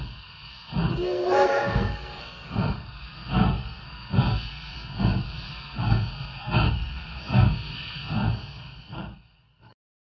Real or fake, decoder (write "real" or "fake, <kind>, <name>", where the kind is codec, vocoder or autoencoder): fake, codec, SNAC